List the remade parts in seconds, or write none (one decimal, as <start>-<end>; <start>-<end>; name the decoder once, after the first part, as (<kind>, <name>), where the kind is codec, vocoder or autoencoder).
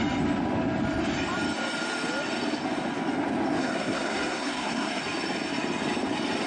3.6-5.0 (codec, SNAC)